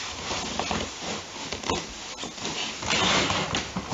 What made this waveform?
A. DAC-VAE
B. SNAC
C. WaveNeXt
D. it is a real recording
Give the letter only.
D